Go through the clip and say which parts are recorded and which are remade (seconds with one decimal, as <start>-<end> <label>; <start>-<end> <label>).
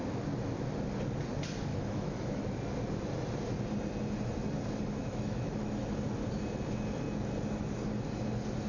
0.0-1.7 recorded; 1.7-2.4 remade; 2.4-5.0 recorded; 5.0-5.9 remade; 5.9-8.7 recorded